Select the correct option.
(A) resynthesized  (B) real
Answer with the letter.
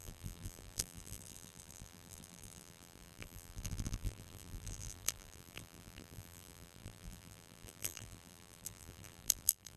A